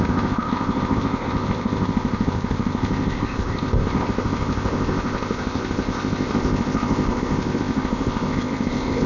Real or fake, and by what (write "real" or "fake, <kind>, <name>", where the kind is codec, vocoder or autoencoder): fake, codec, ZipCodec